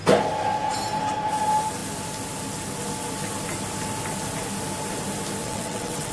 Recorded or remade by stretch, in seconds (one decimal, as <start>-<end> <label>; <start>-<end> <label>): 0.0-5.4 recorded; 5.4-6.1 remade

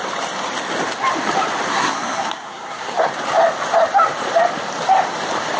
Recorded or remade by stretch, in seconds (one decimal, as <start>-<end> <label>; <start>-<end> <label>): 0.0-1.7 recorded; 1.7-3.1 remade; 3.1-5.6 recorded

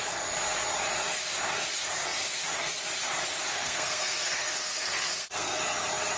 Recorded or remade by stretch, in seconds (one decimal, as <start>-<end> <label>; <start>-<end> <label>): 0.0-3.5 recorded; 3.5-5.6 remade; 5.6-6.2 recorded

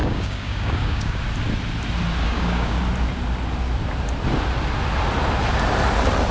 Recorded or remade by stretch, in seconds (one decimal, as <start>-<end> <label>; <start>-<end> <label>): 0.0-1.2 remade; 1.2-2.2 recorded; 2.2-2.8 remade; 2.8-6.3 recorded

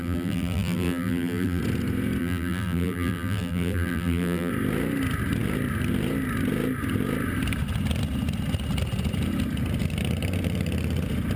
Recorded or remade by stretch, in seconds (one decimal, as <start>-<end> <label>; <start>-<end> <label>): 0.0-1.6 remade; 1.6-2.2 recorded; 2.2-4.5 remade; 4.5-11.4 recorded

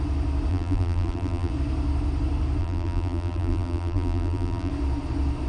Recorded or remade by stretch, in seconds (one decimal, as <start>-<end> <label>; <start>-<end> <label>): 0.0-0.5 recorded; 0.5-1.5 remade; 1.5-2.6 recorded; 2.6-4.7 remade; 4.7-5.5 recorded